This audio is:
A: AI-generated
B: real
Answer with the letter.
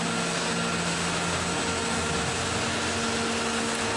B